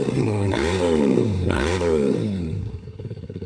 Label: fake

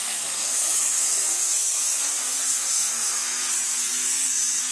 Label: fake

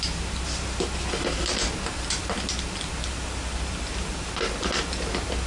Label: real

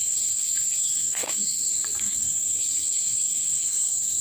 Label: fake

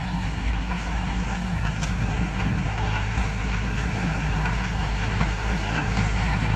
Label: fake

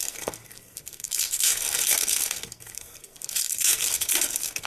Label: fake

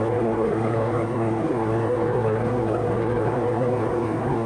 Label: fake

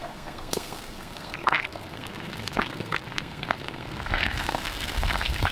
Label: fake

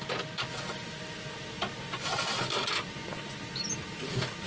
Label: real